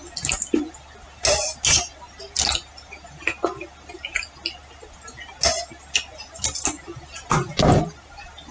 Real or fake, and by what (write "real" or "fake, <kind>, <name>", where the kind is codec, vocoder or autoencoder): real